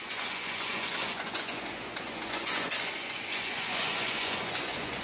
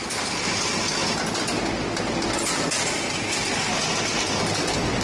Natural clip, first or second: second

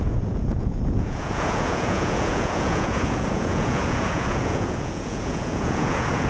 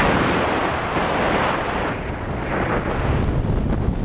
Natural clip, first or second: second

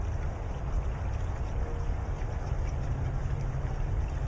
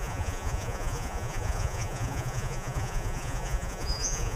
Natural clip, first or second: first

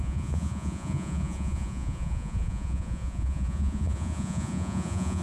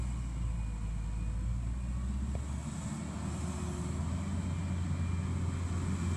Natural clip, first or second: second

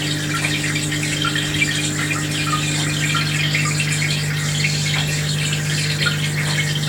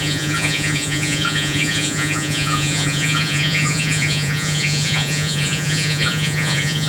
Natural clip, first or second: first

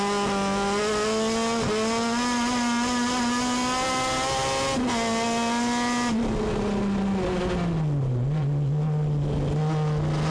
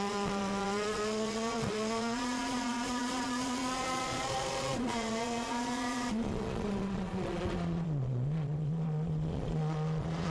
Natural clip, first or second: first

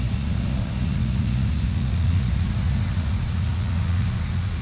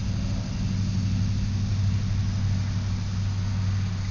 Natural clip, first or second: second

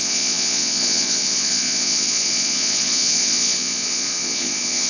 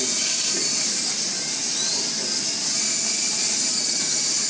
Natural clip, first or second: second